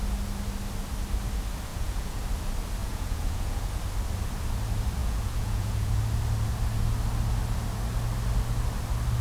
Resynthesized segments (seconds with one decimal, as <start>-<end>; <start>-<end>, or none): 1.7-2.2; 2.8-3.8; 5.0-6.0